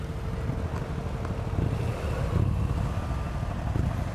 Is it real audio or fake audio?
real